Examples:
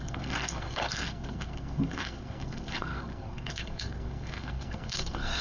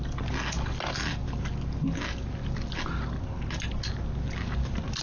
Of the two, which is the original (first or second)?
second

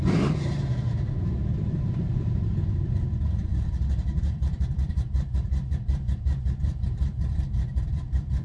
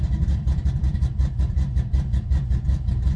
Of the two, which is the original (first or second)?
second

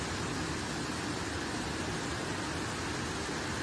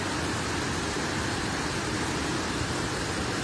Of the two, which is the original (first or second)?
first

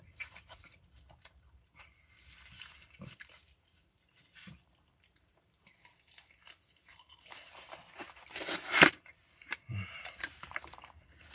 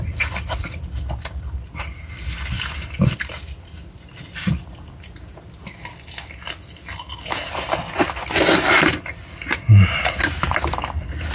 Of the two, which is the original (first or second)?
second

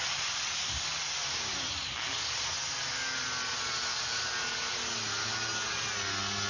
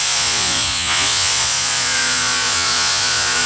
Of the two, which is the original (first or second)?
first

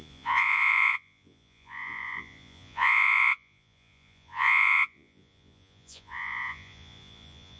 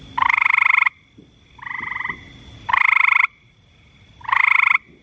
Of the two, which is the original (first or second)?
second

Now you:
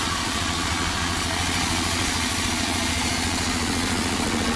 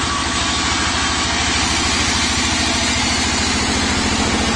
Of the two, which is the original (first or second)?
second